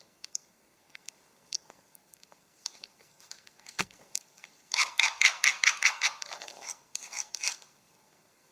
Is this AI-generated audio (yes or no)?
yes